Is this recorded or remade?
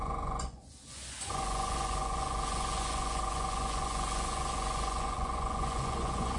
remade